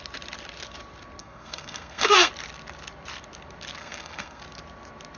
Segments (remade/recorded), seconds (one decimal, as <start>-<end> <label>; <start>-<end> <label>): 0.0-1.2 recorded; 1.2-2.3 remade; 2.3-3.8 recorded; 3.8-4.4 remade; 4.4-5.2 recorded